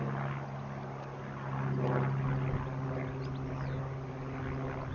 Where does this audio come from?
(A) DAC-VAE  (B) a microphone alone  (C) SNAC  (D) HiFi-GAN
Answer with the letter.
B